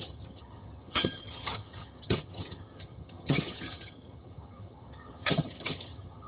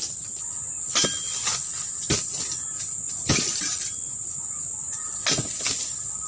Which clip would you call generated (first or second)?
first